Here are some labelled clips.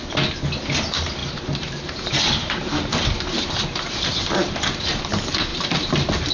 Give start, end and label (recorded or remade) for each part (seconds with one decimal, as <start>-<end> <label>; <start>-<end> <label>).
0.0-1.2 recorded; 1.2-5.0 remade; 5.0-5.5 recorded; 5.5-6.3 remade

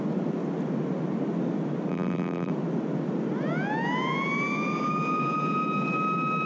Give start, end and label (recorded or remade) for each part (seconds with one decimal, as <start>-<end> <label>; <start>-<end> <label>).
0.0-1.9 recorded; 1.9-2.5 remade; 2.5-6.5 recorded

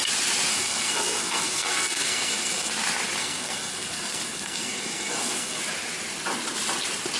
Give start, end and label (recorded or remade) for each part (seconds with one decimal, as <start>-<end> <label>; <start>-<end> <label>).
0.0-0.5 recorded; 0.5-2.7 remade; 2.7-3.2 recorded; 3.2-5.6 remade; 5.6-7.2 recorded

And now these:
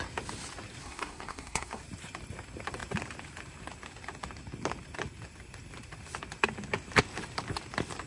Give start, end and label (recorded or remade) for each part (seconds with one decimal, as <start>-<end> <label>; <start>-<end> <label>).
0.0-0.8 recorded; 0.8-1.8 remade; 1.8-8.1 recorded

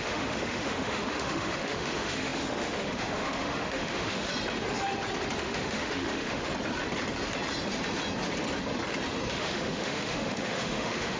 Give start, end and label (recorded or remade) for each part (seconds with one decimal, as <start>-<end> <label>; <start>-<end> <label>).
0.0-4.3 remade; 4.3-5.4 recorded; 5.4-6.5 remade; 6.5-9.3 recorded; 9.3-11.2 remade